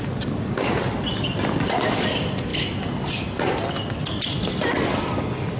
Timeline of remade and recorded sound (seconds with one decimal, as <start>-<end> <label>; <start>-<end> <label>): 0.0-5.6 recorded